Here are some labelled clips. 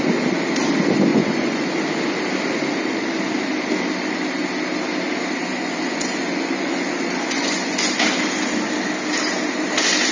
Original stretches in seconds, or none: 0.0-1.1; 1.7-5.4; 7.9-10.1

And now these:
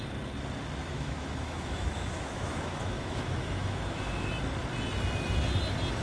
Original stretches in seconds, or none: 0.0-0.8; 4.3-6.0

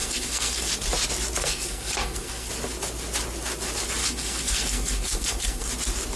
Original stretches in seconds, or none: 0.7-1.4; 2.5-4.0; 5.7-6.2

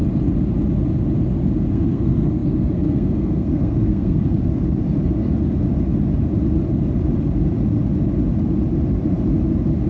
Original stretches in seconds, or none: 0.0-1.7; 4.5-9.9

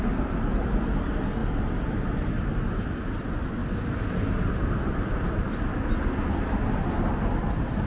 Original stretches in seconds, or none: 1.4-2.8; 3.6-4.5

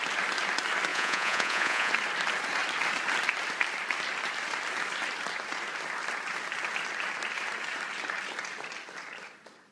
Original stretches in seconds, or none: 0.0-0.9; 1.9-9.7

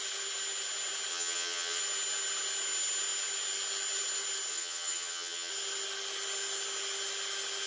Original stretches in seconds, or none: 0.0-1.1; 1.8-4.5; 5.5-7.7